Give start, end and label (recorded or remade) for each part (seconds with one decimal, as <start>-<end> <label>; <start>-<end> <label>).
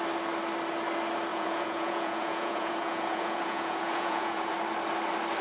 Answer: 0.0-1.3 recorded; 1.3-4.5 remade; 4.5-5.4 recorded